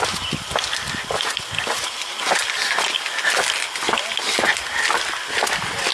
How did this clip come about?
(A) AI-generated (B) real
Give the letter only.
B